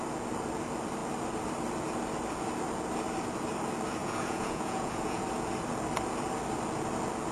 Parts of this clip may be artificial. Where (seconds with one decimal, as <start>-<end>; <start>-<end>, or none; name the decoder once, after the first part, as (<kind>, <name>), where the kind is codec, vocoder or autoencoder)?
4.0-5.2 (vocoder, Vocos)